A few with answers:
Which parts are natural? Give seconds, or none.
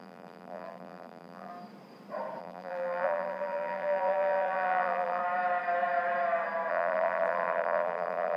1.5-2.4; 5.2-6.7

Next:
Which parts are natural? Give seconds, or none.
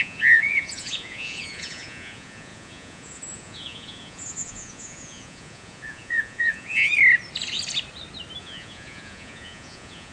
6.9-8.4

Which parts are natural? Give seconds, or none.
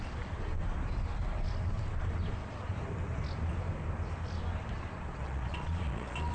0.0-5.2